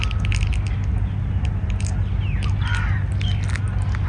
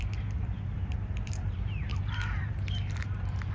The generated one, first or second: second